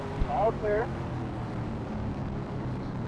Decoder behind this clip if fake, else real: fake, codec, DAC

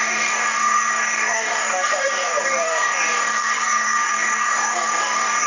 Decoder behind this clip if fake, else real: fake, codec, DAC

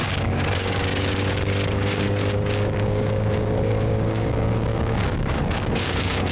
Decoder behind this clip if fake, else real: fake, codec, DAC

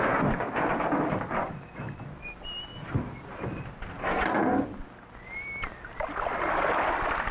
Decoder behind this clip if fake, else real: real